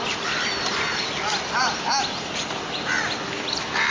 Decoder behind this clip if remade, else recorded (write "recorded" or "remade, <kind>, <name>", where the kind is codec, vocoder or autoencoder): remade, vocoder, BigVGAN v2